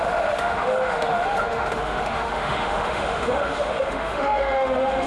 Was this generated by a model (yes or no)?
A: yes